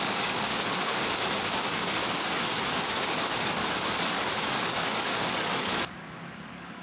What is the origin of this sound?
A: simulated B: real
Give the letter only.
A